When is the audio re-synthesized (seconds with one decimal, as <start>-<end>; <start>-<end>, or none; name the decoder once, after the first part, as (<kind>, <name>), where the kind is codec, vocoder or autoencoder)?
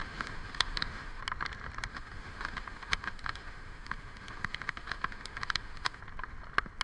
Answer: 0.0-1.2 (autoencoder, DAC-VAE); 1.9-6.0